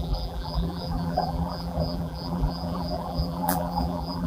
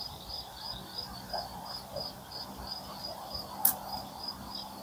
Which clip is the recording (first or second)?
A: second